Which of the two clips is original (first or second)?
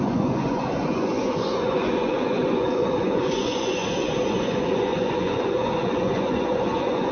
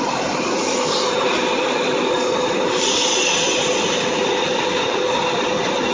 second